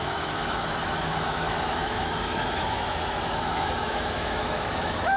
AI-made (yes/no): yes